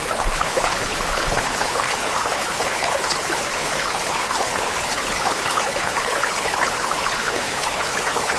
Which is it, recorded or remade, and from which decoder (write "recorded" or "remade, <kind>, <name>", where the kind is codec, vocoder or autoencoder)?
remade, codec, HILCodec